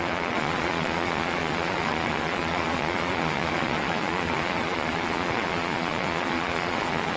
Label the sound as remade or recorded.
remade